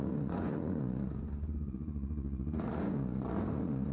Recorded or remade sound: remade